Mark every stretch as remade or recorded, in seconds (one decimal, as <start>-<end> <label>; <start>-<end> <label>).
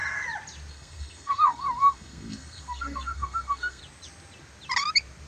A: 0.0-0.7 recorded; 0.7-3.8 remade; 3.8-5.3 recorded